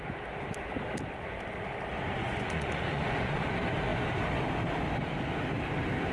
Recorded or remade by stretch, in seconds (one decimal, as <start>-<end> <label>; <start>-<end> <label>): 0.0-2.2 recorded; 2.2-3.5 remade; 3.5-6.1 recorded